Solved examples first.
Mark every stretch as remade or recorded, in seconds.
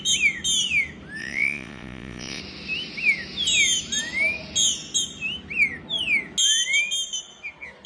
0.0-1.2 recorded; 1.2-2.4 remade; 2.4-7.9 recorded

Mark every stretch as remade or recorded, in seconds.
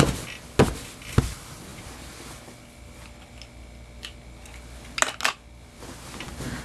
0.0-6.6 recorded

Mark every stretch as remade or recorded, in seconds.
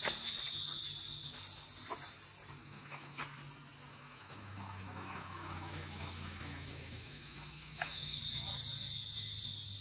0.0-2.6 recorded; 2.6-3.2 remade; 3.2-3.9 recorded; 3.9-8.2 remade; 8.2-9.8 recorded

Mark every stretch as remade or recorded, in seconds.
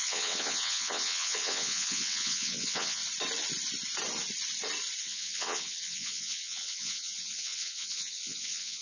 0.0-3.0 remade; 3.0-5.0 recorded; 5.0-8.8 remade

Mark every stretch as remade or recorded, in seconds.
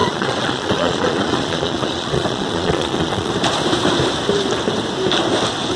0.0-3.3 remade; 3.3-5.8 recorded